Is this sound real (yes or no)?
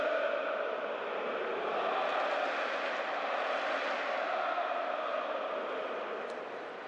yes